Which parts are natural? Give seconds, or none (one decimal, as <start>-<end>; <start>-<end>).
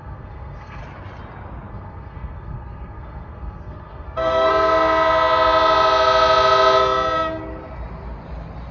0.8-1.7; 4.5-8.7